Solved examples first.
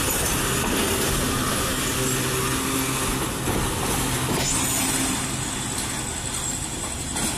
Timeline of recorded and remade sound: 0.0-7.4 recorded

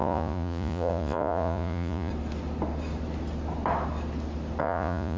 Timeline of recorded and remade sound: 0.0-2.1 remade; 2.1-4.6 recorded; 4.6-5.2 remade

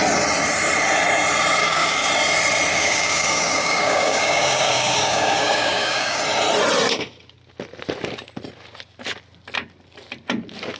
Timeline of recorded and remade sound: 0.0-1.6 recorded; 1.6-2.1 remade; 2.1-2.7 recorded; 2.7-6.2 remade; 6.2-10.8 recorded

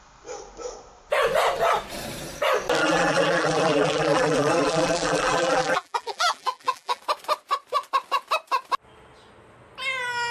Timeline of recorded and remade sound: 0.0-2.8 recorded; 2.8-7.0 remade; 7.0-10.3 recorded

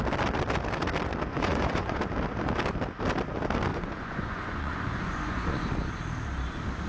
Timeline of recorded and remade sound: 0.0-1.3 recorded; 1.3-2.0 remade; 2.0-3.7 recorded; 3.7-5.6 remade; 5.6-6.9 recorded

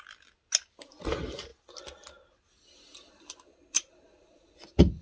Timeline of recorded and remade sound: 0.0-5.0 recorded